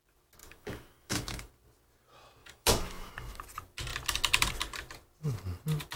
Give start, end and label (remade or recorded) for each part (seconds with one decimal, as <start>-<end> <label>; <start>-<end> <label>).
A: 0.0-0.4 recorded; 0.4-1.5 remade; 1.5-2.4 recorded; 2.4-3.1 remade; 3.1-6.0 recorded